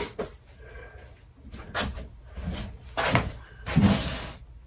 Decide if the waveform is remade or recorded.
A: recorded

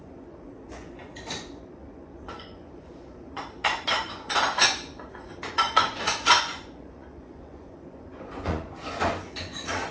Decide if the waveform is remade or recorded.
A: remade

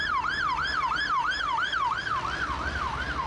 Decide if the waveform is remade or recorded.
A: recorded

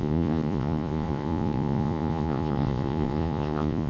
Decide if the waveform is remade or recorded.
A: remade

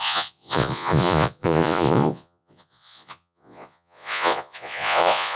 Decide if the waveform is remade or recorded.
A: remade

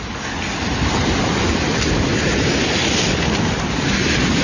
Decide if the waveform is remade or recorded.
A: recorded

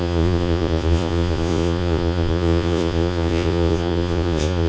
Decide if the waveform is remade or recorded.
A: remade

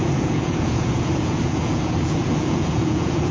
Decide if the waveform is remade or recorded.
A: remade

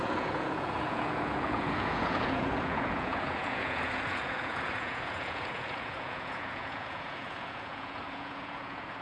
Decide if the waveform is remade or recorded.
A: remade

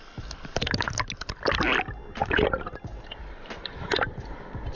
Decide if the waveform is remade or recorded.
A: recorded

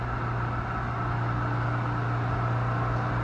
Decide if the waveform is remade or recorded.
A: recorded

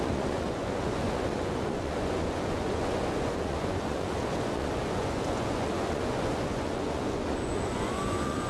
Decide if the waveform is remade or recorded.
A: remade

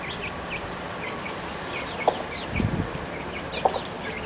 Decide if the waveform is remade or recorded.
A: recorded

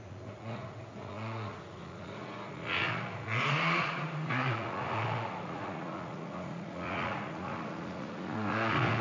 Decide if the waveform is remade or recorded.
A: remade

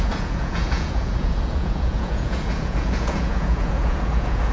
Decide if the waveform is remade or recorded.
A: remade